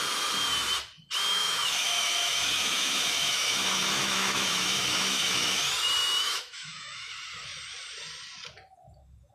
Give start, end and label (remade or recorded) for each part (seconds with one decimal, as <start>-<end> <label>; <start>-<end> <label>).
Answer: 0.0-1.3 recorded; 1.3-5.6 remade; 5.6-6.0 recorded; 6.0-7.1 remade; 7.1-9.3 recorded